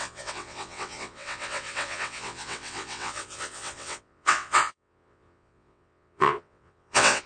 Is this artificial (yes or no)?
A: yes